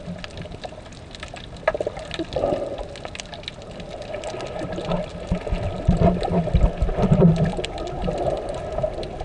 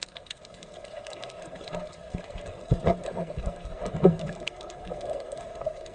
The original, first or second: first